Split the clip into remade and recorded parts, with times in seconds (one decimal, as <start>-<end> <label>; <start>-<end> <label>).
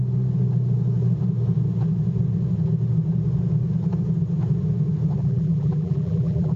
0.0-5.2 recorded; 5.2-6.6 remade